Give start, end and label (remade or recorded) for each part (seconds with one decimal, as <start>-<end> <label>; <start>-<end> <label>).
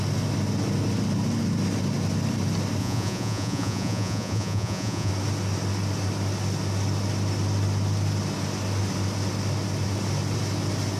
0.0-2.8 recorded; 2.8-5.1 remade; 5.1-11.0 recorded